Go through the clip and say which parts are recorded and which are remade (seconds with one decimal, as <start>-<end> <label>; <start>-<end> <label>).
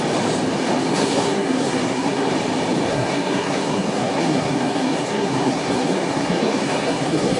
0.0-0.9 recorded; 0.9-2.3 remade; 2.3-2.9 recorded; 2.9-7.4 remade